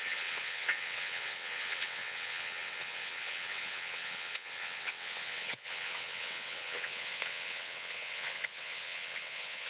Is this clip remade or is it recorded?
remade